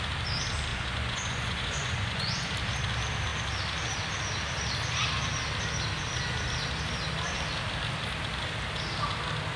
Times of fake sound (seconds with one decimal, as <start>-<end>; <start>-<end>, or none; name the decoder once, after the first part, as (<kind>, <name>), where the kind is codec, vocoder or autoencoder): 0.7-2.5 (vocoder, Vocos)